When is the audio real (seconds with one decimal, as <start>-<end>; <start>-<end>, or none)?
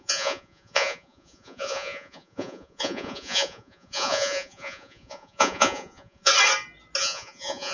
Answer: 6.3-7.0